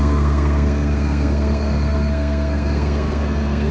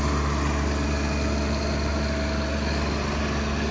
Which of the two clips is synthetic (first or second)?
first